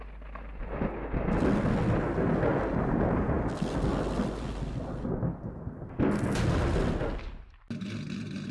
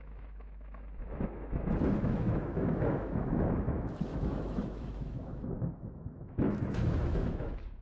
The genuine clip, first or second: first